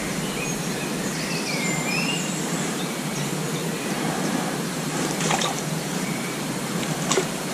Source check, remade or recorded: remade